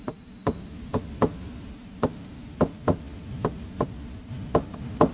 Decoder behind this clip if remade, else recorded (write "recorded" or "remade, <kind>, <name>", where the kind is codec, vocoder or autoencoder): recorded